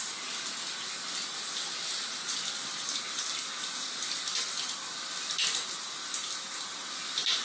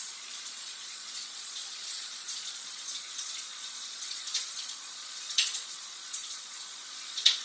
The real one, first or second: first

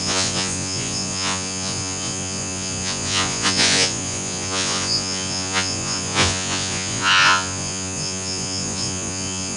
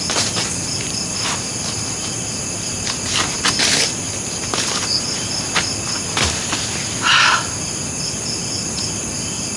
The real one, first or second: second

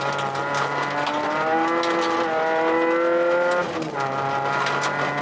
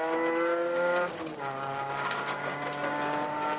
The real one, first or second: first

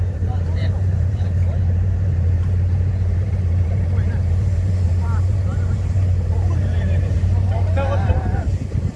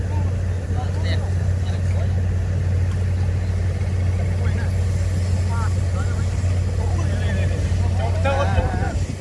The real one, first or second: second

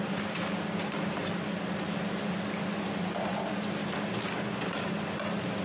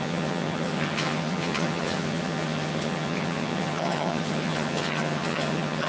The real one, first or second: first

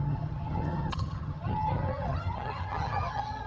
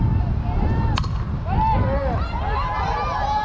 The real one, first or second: second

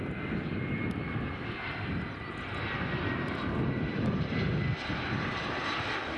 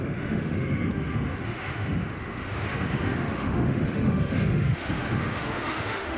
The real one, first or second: first